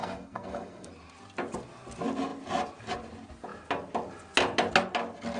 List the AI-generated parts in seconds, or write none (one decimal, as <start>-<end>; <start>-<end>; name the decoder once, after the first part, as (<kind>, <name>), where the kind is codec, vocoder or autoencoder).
0.0-0.9 (codec, SNAC)